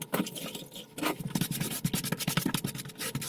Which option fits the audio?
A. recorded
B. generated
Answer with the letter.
A